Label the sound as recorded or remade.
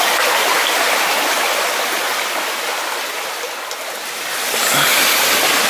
recorded